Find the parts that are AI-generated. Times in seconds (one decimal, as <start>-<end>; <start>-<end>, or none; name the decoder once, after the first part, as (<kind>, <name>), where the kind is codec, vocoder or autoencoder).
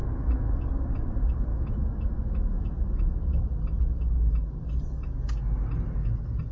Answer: 0.0-0.5 (autoencoder, DAC-VAE); 1.5-2.6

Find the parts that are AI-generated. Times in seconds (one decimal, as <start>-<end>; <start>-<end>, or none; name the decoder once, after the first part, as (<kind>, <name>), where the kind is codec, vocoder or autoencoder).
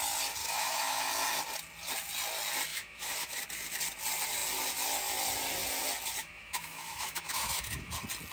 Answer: 0.4-1.1 (autoencoder, DAC-VAE); 2.7-3.4; 6.2-7.9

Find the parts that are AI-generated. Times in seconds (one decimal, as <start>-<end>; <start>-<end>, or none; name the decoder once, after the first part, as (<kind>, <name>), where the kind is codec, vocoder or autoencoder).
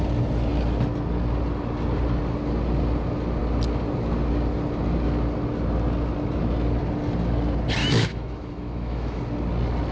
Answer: 7.8-9.2 (autoencoder, DAC-VAE)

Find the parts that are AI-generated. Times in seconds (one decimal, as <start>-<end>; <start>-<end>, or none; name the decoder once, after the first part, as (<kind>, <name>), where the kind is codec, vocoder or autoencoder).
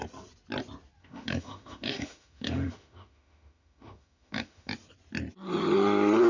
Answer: 1.0-4.7 (autoencoder, DAC-VAE)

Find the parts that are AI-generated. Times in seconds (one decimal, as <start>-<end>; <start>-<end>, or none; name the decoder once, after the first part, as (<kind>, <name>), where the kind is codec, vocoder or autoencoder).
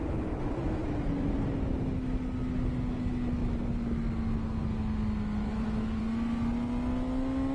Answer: 0.0-0.8 (autoencoder, DAC-VAE); 5.5-6.0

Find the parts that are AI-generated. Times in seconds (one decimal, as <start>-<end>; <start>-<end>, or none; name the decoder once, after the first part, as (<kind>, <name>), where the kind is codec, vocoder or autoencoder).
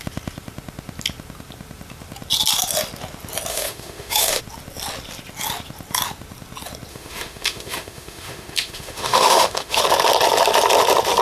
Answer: 3.5-4.4 (autoencoder, DAC-VAE); 6.9-9.8